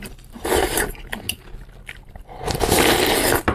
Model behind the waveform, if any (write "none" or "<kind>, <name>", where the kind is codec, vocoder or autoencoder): none